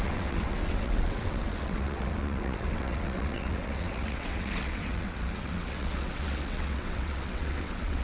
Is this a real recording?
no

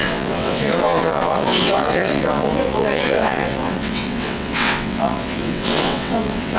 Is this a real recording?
no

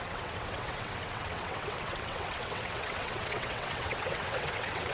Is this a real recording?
no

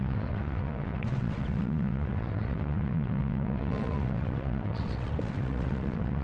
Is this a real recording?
no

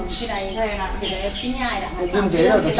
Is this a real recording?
yes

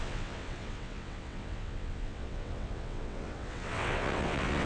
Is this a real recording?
no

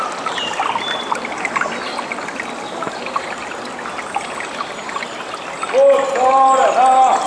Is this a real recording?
yes